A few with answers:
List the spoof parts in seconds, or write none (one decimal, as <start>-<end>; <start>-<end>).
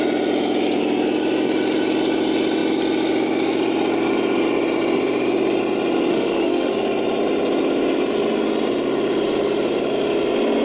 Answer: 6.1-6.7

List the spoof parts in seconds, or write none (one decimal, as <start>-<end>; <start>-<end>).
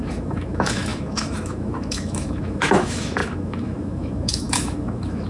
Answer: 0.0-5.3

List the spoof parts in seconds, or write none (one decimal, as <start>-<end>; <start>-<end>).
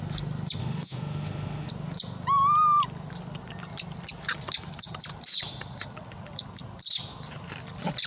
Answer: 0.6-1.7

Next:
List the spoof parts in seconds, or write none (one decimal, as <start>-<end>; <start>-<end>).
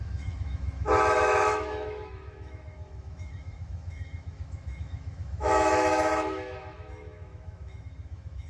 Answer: 0.0-8.5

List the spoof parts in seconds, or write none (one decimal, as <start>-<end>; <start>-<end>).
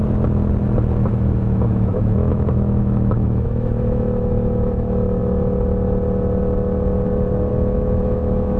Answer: 1.1-5.2; 7.5-8.6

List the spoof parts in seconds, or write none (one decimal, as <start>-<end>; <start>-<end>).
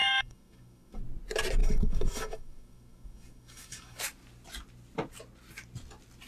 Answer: 0.0-1.0; 1.6-4.0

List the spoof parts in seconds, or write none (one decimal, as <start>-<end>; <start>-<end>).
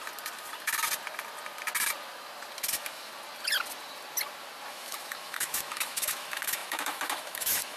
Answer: 2.7-3.1; 4.7-7.8